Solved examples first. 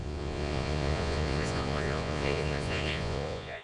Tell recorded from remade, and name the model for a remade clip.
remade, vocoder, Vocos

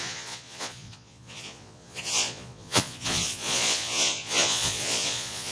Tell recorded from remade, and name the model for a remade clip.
remade, vocoder, Vocos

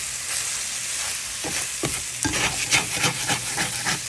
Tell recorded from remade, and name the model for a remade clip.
recorded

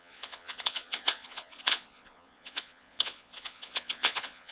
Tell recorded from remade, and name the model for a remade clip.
remade, vocoder, Vocos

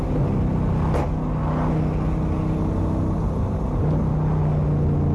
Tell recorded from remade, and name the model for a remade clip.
recorded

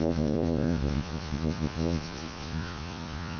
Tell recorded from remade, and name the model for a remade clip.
remade, vocoder, Vocos